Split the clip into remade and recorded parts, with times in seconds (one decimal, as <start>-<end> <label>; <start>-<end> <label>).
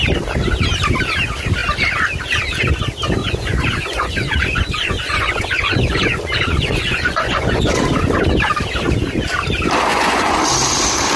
0.0-3.2 recorded; 3.2-7.7 remade; 7.7-9.9 recorded; 9.9-10.4 remade; 10.4-11.2 recorded